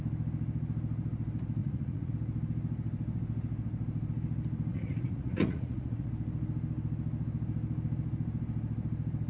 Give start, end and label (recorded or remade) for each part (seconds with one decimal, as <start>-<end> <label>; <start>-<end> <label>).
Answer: 0.0-1.6 recorded; 1.6-2.1 remade; 2.1-4.7 recorded; 4.7-6.1 remade; 6.1-9.3 recorded